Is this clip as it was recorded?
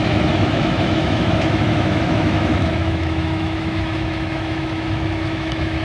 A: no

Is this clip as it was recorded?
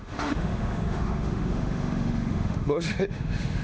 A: no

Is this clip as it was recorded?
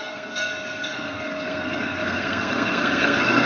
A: no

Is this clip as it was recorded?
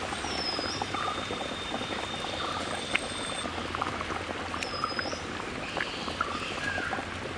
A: yes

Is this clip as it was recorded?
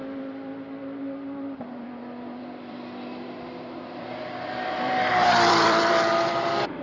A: no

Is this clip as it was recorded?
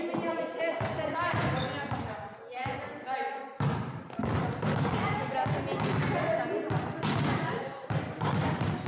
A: yes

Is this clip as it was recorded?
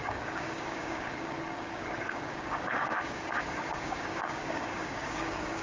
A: no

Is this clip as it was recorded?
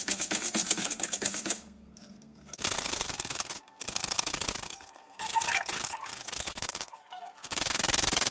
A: no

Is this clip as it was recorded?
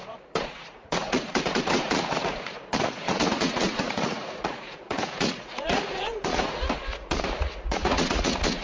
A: no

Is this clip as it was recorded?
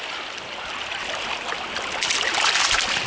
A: yes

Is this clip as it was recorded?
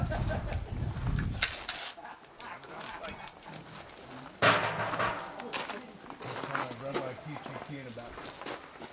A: yes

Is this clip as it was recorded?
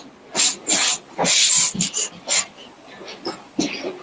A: yes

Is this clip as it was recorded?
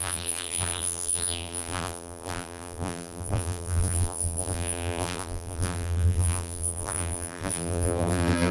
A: no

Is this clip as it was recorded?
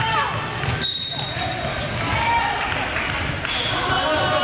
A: yes